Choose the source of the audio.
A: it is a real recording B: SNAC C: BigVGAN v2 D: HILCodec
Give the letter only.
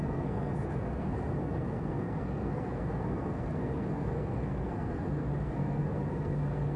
B